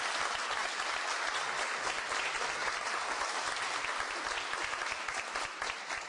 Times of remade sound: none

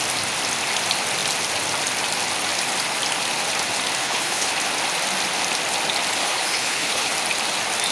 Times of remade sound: 4.0-4.5 (codec, HILCodec); 6.2-7.1

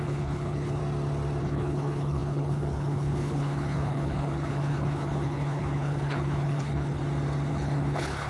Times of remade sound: 0.0-0.8 (codec, HILCodec); 1.4-7.0; 7.5-8.3

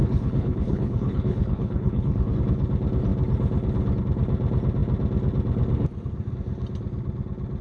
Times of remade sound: 0.0-2.4 (codec, HILCodec)

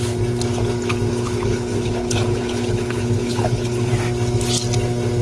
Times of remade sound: 1.1-3.9 (codec, HILCodec)

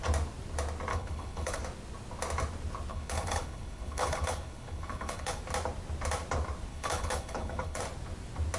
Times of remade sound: 0.9-1.6 (codec, HILCodec); 2.9-5.4; 6.7-7.8

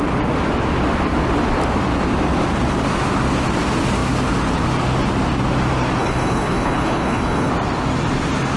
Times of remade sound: 6.0-7.5 (codec, HILCodec)